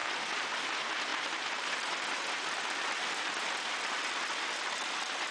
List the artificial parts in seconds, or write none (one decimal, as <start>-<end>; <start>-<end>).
none